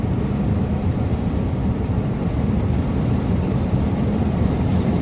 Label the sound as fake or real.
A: fake